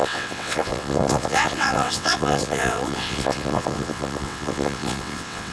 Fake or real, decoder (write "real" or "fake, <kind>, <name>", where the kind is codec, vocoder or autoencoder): fake, vocoder, WaveNeXt